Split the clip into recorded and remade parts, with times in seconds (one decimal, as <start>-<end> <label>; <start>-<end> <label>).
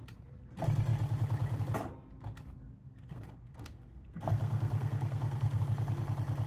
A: 0.0-2.8 recorded; 2.8-5.6 remade; 5.6-6.5 recorded